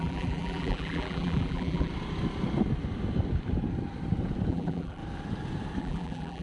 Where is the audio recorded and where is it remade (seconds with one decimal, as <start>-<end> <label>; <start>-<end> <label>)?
0.0-1.9 remade; 1.9-4.5 recorded; 4.5-5.0 remade; 5.0-5.8 recorded; 5.8-6.4 remade